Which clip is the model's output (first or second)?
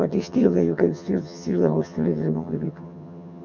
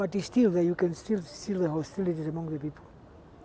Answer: first